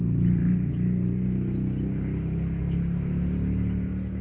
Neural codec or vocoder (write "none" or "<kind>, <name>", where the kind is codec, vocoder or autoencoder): none